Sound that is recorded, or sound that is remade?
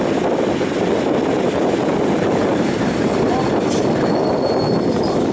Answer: recorded